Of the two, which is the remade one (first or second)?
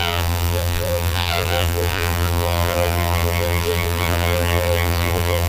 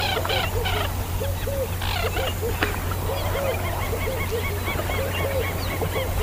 first